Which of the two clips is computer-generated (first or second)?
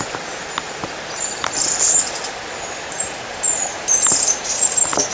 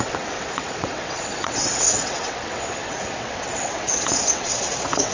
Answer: second